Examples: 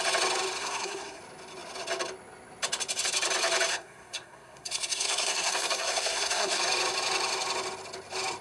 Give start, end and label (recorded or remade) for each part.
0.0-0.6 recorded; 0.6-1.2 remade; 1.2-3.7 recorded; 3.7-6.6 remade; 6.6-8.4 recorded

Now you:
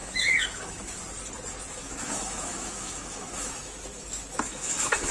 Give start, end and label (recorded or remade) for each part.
0.0-1.0 remade; 1.0-1.7 recorded; 1.7-5.1 remade

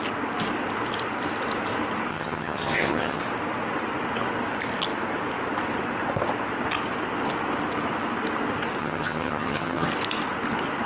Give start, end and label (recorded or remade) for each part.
0.0-2.1 recorded; 2.1-3.2 remade; 3.2-8.8 recorded; 8.8-9.9 remade; 9.9-10.9 recorded

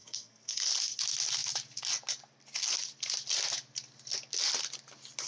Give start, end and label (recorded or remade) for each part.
0.0-0.7 remade; 0.7-5.3 recorded